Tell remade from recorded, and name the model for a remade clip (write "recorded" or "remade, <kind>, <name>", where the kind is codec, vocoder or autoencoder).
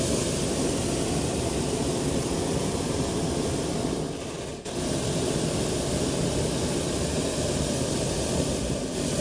recorded